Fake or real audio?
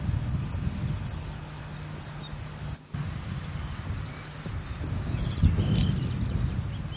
real